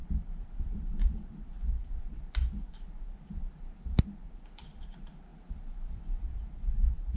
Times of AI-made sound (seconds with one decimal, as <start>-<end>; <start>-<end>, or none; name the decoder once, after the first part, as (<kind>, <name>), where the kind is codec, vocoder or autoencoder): none